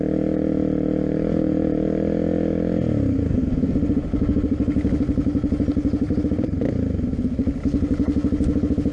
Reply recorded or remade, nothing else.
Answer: recorded